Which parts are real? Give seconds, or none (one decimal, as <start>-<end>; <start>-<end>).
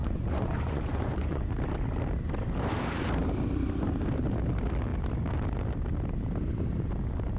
1.5-7.4